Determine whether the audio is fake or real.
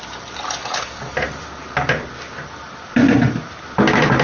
real